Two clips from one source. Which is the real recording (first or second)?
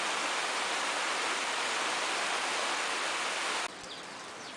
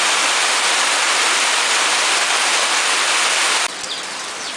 first